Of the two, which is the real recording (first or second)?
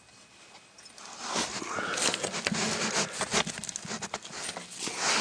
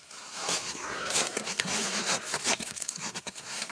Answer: first